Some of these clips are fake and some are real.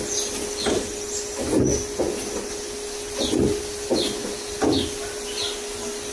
real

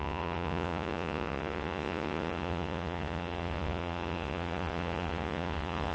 fake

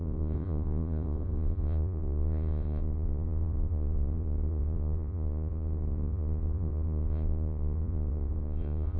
fake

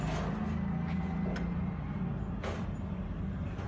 real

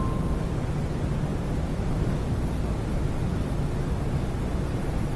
real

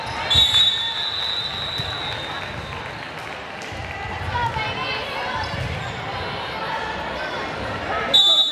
real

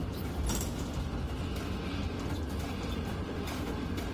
real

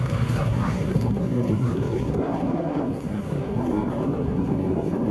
fake